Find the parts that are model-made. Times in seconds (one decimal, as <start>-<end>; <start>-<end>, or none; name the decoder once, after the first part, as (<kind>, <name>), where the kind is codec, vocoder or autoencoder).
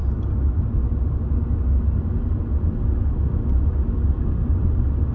none